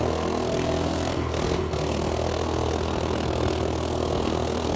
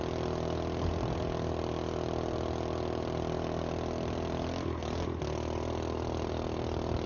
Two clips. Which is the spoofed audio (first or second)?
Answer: first